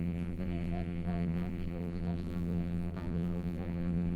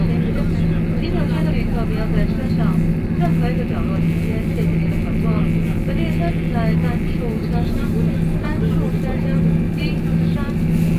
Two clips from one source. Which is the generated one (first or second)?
first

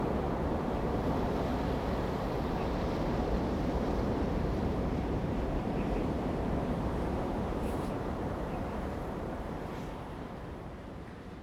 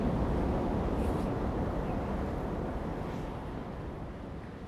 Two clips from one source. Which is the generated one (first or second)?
first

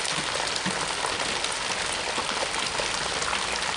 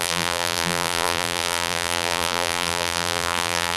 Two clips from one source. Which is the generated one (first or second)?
second